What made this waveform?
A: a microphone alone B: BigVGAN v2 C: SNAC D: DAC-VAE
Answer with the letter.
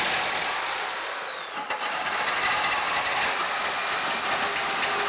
A